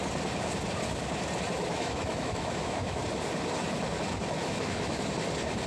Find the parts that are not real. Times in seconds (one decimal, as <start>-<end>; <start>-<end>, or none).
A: 1.7-3.0; 4.4-5.1